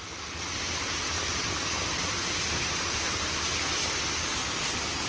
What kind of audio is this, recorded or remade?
recorded